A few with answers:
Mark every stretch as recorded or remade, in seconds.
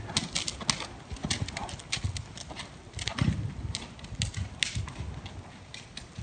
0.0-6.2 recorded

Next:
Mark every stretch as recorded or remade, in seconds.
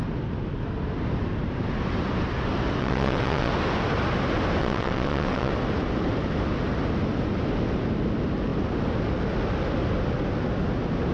0.0-2.8 recorded; 2.8-3.5 remade; 3.5-4.6 recorded; 4.6-5.5 remade; 5.5-11.1 recorded